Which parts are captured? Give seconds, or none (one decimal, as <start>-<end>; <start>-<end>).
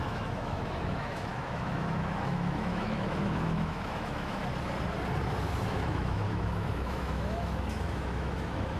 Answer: 4.4-5.6